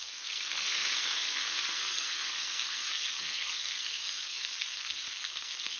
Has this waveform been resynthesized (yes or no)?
yes